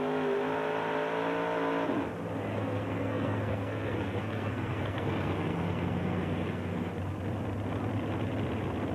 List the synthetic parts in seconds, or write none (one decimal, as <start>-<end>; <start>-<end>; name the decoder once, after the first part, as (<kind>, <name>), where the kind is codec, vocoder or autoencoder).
2.5-6.9 (codec, SNAC)